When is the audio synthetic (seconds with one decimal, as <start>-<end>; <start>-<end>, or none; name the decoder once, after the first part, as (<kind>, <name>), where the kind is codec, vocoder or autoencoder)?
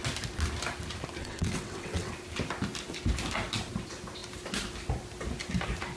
1.2-2.1 (vocoder, WaveNeXt)